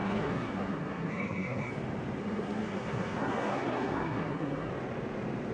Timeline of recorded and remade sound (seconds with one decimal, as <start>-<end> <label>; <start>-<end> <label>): 0.0-1.7 remade; 1.7-2.2 recorded; 2.2-4.7 remade; 4.7-5.5 recorded